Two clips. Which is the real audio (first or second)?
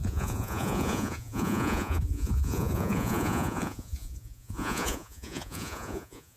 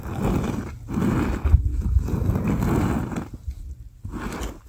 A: second